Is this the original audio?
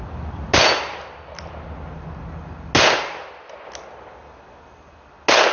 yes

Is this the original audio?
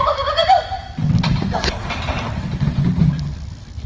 yes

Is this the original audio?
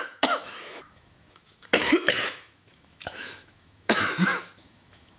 no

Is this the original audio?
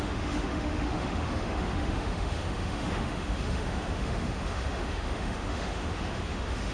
no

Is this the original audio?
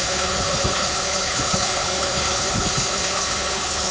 no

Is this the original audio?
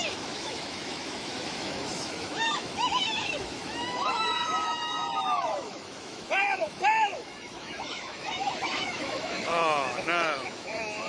no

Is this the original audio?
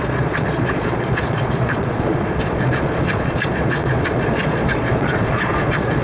no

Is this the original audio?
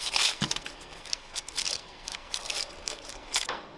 no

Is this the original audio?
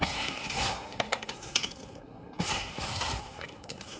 no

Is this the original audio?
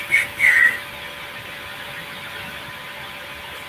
yes